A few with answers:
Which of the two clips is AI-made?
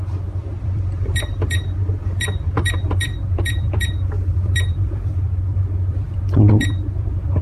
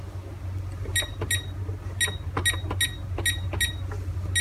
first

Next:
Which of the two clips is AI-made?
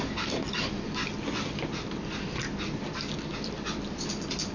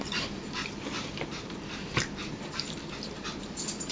second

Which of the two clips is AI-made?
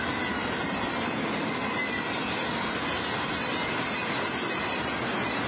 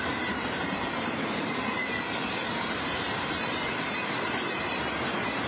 second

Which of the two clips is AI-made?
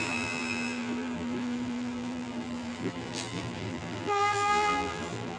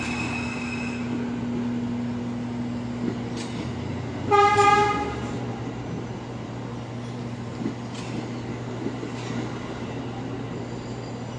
first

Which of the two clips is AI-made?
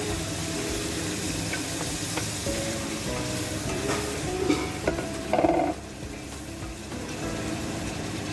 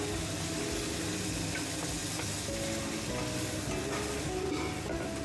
first